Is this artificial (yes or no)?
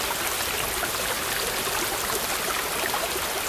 no